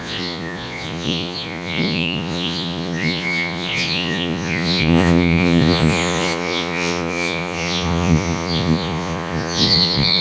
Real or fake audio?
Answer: fake